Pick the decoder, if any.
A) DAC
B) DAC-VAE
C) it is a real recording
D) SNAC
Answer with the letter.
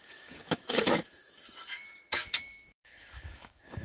B